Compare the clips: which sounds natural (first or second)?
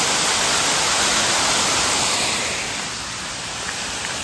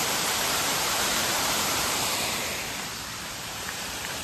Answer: first